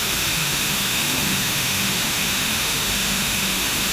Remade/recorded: remade